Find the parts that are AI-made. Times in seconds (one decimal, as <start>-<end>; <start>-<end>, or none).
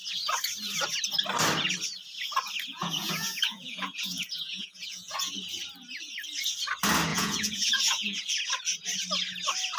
2.7-5.3; 7.1-8.2